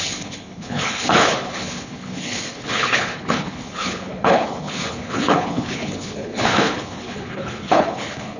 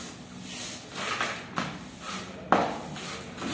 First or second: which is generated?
first